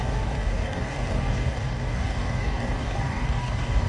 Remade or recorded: remade